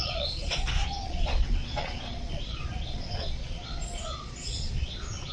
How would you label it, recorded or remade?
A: remade